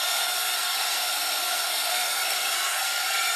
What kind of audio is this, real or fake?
fake